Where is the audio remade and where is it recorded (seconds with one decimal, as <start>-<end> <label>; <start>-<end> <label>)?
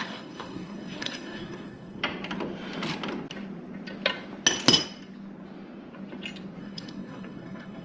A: 0.0-2.0 remade; 2.0-6.6 recorded; 6.6-7.8 remade